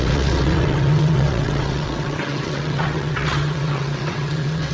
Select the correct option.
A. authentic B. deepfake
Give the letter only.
B